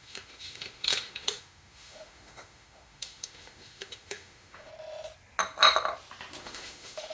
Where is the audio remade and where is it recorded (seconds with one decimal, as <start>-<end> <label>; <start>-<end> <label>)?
0.0-4.7 remade; 4.7-6.4 recorded; 6.4-7.1 remade